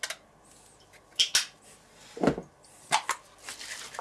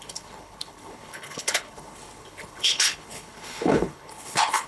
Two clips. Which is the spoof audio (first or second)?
second